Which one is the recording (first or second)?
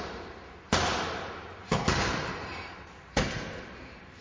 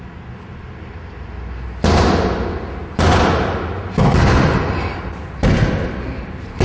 second